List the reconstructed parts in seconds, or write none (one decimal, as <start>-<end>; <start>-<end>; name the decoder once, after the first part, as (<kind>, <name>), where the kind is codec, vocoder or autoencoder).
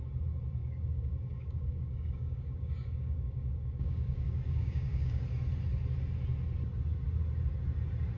0.6-5.2 (codec, DAC)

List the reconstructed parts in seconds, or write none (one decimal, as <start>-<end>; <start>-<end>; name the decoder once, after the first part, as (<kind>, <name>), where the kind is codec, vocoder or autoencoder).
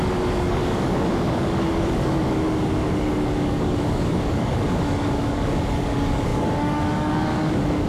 0.0-7.9 (codec, DAC)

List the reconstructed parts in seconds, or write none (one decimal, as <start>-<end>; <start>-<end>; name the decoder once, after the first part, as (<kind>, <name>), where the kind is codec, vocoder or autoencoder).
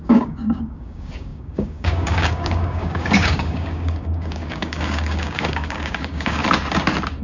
0.0-6.4 (codec, DAC)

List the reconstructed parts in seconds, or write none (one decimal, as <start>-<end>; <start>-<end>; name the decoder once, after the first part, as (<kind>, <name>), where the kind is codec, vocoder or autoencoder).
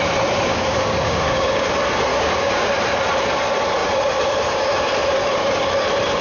0.5-1.7 (codec, DAC); 2.1-2.7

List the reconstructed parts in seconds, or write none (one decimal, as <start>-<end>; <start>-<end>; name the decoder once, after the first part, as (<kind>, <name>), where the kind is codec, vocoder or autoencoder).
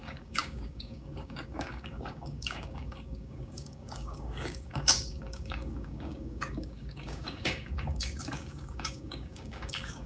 0.0-10.1 (codec, DAC)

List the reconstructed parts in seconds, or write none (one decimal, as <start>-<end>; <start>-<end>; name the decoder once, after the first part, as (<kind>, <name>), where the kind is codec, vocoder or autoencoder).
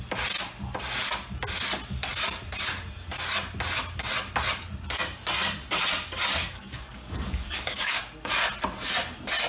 6.4-8.0 (codec, DAC)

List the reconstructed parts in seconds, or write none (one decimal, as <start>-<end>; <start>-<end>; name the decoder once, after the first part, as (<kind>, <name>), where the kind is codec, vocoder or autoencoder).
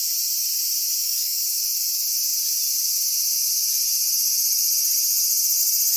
1.0-1.6 (codec, DAC)